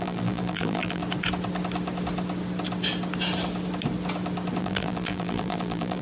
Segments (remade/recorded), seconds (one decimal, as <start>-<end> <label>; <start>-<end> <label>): 0.0-1.0 remade; 1.0-4.6 recorded; 4.6-6.0 remade

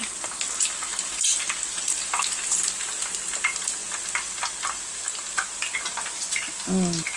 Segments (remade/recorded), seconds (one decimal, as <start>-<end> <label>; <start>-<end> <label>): 0.0-7.2 recorded

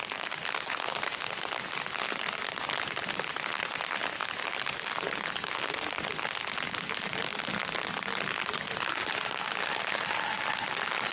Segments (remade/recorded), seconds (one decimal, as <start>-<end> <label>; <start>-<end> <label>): 0.0-11.1 recorded

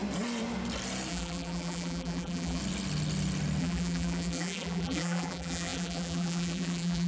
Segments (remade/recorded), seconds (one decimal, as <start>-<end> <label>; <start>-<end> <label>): 0.0-1.1 recorded; 1.1-2.6 remade; 2.6-3.6 recorded; 3.6-7.1 remade